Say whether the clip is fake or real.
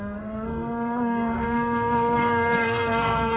fake